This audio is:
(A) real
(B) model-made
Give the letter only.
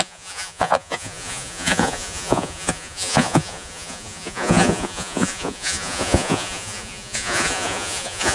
B